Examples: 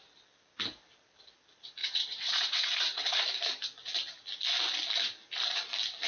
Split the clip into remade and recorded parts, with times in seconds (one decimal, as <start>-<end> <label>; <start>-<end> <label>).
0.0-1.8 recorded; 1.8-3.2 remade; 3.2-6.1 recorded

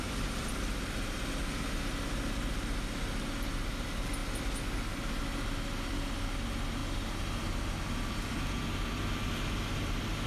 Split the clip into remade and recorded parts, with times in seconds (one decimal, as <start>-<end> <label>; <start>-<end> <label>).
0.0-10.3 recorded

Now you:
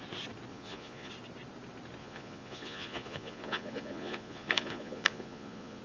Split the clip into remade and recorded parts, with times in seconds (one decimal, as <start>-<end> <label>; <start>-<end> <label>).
0.0-0.5 recorded; 0.5-1.1 remade; 1.1-2.0 recorded; 2.0-5.8 remade

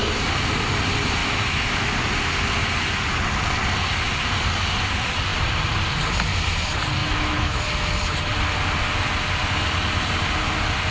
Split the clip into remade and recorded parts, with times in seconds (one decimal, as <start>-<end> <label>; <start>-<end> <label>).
0.0-1.2 recorded; 1.2-1.9 remade; 1.9-7.0 recorded; 7.0-7.6 remade; 7.6-10.9 recorded

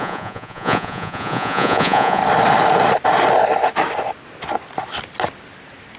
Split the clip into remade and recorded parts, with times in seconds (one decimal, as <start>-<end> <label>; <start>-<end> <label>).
0.0-2.2 remade; 2.2-6.0 recorded

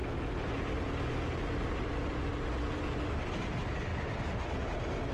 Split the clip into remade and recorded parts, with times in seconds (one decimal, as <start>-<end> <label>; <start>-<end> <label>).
0.0-5.1 recorded